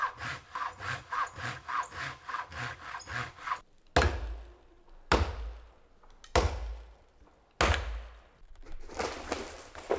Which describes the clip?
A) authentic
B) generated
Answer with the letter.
A